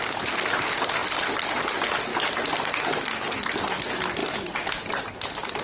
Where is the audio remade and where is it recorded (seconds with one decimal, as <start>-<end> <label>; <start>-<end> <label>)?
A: 0.0-5.6 recorded